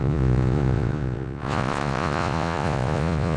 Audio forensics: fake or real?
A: fake